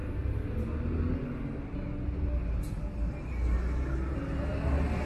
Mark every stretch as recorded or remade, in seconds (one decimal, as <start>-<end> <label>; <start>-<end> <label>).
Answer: 0.0-5.1 recorded